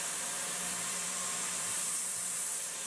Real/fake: fake